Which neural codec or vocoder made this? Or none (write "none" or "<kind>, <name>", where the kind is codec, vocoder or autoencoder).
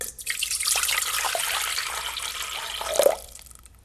none